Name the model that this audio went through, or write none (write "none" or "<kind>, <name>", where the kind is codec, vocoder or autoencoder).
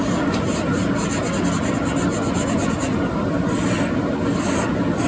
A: none